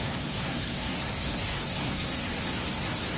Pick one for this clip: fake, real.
fake